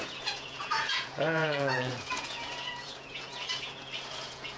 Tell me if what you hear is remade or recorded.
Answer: remade